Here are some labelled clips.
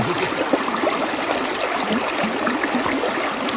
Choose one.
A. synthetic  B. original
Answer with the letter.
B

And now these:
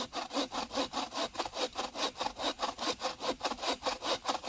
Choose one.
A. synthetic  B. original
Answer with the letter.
B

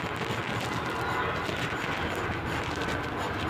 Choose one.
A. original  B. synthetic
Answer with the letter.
A